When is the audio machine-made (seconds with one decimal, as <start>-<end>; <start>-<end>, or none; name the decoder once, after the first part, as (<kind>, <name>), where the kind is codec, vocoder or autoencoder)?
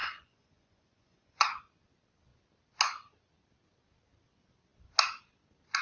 0.0-1.6 (vocoder, Vocos)